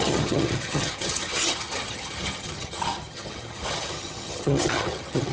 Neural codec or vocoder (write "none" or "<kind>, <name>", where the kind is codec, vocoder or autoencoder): vocoder, HiFi-GAN